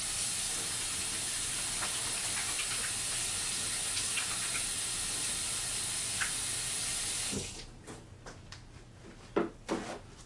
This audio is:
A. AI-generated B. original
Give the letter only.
B